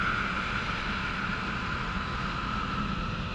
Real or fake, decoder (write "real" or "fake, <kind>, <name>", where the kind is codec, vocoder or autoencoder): real